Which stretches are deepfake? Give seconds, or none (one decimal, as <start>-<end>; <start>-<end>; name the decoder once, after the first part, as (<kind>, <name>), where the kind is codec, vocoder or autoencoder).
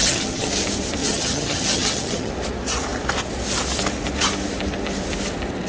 0.0-0.5 (vocoder, HiFi-GAN); 1.0-2.3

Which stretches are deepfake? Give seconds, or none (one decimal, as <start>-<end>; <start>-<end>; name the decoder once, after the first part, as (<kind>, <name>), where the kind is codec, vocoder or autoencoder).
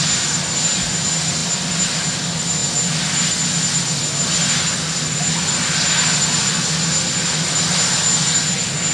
none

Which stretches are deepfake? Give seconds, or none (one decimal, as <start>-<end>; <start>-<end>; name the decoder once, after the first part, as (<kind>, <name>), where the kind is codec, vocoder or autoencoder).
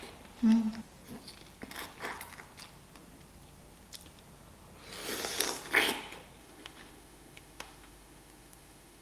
6.4-9.0 (autoencoder, DAC-VAE)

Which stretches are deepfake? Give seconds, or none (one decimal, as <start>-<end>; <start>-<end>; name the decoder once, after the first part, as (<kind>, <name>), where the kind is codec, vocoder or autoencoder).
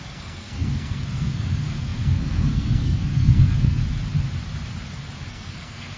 0.0-3.8 (codec, SNAC); 5.3-6.0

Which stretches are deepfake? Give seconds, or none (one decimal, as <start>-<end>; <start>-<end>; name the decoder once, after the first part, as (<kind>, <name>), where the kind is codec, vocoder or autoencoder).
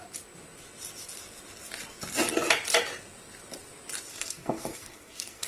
4.1-5.5 (codec, SNAC)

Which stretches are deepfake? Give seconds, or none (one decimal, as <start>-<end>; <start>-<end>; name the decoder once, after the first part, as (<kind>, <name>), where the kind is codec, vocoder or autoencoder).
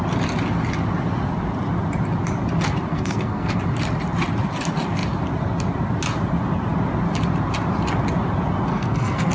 2.9-3.6 (codec, SNAC); 8.7-9.3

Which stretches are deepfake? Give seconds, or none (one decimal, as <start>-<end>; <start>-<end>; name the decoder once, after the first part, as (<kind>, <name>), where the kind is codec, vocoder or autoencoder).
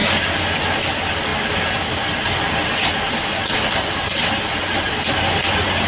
none